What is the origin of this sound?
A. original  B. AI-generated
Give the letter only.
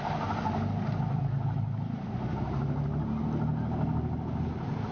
A